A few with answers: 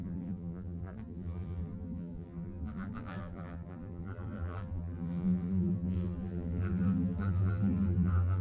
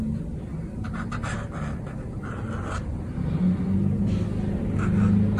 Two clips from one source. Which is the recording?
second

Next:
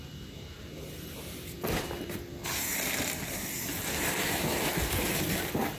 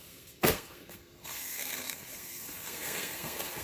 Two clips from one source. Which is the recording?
first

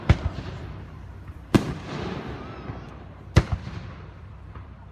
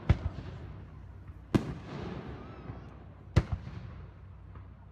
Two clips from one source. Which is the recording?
second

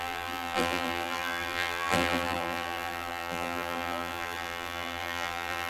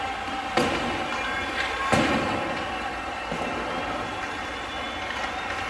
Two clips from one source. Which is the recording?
second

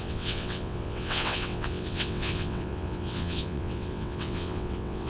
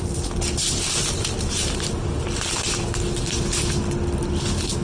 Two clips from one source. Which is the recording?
second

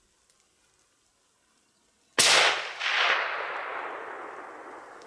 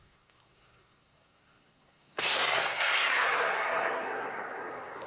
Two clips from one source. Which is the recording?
first